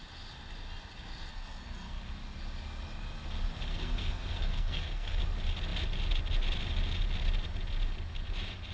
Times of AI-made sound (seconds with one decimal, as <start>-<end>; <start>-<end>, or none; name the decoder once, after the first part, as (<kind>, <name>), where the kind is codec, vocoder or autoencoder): 1.3-2.0 (codec, SNAC); 3.7-5.2